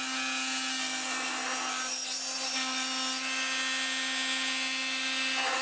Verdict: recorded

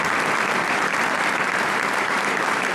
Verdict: remade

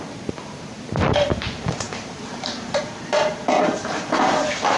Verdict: remade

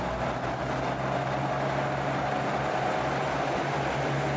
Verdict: recorded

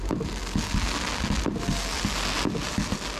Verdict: recorded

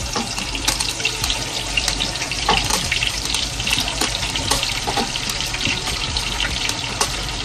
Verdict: remade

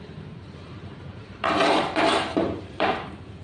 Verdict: remade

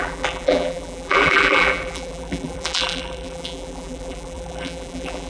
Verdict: remade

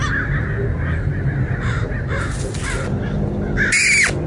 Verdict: recorded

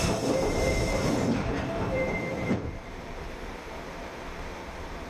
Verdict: remade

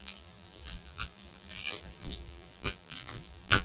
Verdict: remade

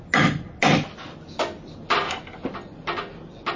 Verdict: recorded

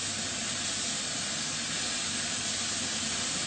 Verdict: recorded